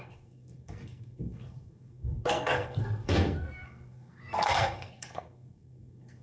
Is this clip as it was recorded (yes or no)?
no